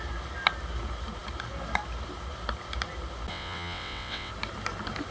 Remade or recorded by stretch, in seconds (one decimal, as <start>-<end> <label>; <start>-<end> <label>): 0.0-3.3 recorded; 3.3-4.3 remade; 4.3-5.1 recorded